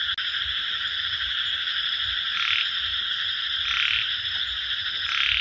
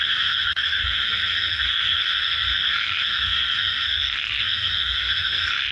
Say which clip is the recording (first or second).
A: first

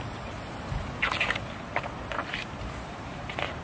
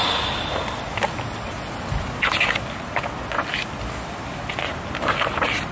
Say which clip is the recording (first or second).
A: second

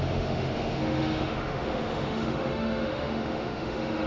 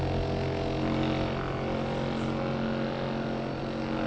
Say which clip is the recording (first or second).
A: second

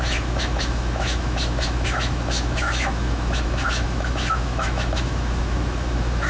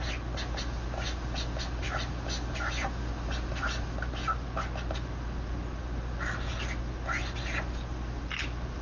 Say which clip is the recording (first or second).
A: second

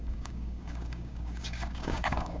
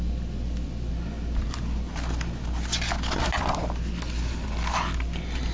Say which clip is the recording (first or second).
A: second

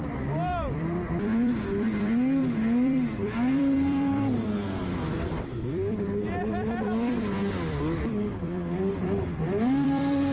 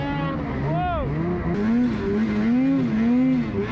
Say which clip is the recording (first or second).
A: second